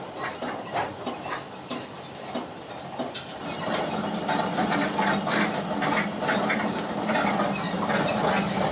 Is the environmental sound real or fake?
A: real